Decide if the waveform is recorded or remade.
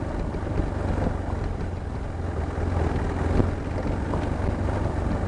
recorded